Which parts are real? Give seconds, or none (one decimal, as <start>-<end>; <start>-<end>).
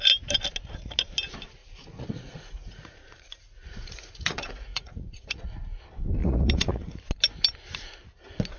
0.0-1.6; 5.8-6.2; 7.0-8.6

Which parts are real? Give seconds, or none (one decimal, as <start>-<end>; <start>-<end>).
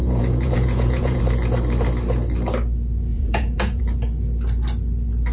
1.2-3.1; 3.8-5.3